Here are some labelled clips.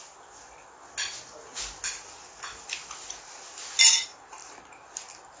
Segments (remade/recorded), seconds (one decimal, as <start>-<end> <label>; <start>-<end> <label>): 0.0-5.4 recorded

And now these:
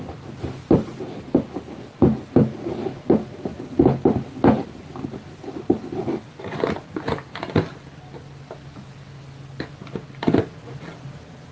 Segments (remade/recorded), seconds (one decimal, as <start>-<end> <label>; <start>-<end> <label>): 0.0-3.5 recorded; 3.5-6.3 remade; 6.3-11.5 recorded

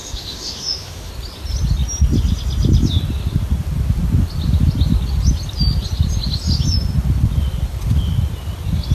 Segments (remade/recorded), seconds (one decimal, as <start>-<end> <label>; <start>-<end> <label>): 0.0-1.1 remade; 1.1-8.9 recorded

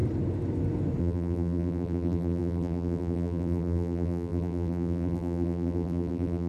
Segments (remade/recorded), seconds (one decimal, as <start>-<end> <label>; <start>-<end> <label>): 0.0-1.0 recorded; 1.0-6.5 remade